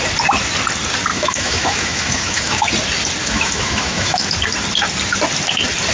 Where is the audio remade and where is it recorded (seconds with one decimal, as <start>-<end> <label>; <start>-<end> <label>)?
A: 0.0-1.1 recorded; 1.1-2.7 remade; 2.7-3.2 recorded; 3.2-4.3 remade; 4.3-5.9 recorded